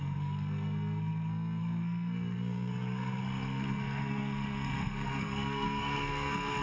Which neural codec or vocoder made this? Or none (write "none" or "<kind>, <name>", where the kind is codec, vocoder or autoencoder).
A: codec, SNAC